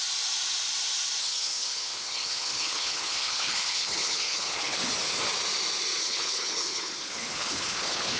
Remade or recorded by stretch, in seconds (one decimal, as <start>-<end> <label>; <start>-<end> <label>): 0.0-1.2 recorded; 1.2-4.9 remade; 4.9-6.0 recorded; 6.0-8.2 remade